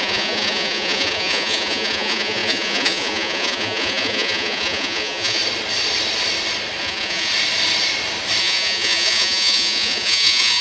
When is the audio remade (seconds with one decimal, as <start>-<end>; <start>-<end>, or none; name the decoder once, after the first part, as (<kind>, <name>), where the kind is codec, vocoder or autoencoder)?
0.0-5.4 (vocoder, Vocos); 6.8-7.3; 8.4-10.6